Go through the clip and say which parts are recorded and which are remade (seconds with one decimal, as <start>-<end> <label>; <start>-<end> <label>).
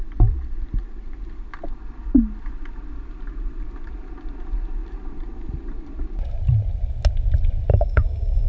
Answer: 0.0-7.7 recorded; 7.7-8.5 remade